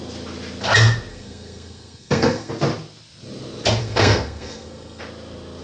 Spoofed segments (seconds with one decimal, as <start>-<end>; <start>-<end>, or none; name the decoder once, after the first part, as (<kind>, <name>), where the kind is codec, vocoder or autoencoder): 1.1-2.5 (codec, SNAC); 3.8-5.0